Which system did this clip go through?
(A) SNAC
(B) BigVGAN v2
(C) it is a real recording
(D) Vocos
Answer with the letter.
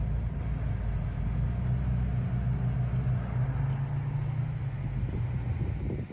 C